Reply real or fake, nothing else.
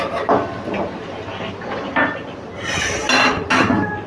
real